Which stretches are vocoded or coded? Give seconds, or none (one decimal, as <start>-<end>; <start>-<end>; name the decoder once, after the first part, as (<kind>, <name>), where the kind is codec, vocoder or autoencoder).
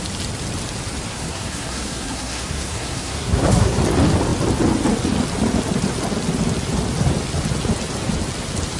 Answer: 1.1-3.8 (codec, SNAC)